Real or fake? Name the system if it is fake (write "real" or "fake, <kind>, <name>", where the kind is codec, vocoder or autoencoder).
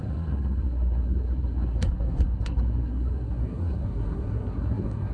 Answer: fake, codec, SNAC